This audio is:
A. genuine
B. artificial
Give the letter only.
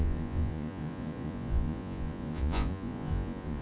B